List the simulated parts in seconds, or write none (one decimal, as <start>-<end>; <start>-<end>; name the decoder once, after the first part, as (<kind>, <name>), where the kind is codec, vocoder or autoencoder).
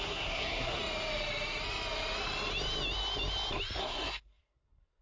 0.0-0.8 (codec, SNAC); 3.8-5.0